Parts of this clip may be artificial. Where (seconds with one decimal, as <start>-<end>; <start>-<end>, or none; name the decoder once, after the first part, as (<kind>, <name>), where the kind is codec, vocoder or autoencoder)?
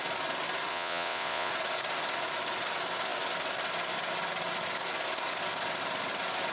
0.7-1.5 (vocoder, WaveNeXt)